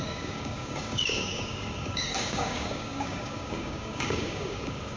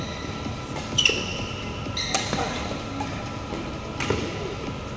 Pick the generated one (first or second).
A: first